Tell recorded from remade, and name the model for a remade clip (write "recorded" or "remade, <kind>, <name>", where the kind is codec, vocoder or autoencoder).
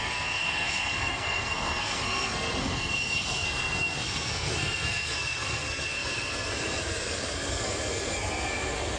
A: remade, codec, SNAC